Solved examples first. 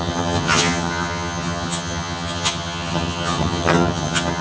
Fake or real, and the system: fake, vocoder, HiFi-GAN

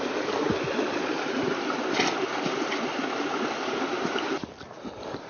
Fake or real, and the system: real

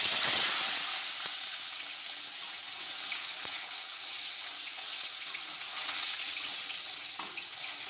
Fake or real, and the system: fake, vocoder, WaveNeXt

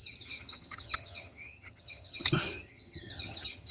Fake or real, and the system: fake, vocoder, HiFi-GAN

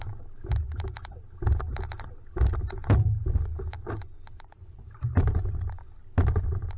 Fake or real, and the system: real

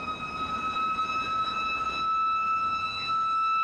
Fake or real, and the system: real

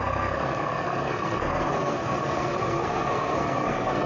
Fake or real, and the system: fake, codec, SNAC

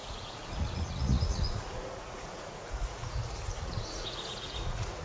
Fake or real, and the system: fake, vocoder, Vocos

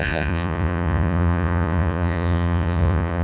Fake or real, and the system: fake, vocoder, Vocos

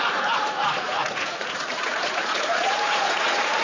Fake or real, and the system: fake, vocoder, Vocos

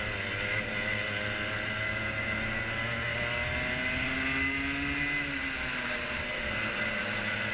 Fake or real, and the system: real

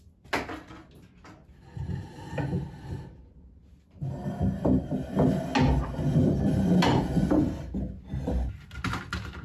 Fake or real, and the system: real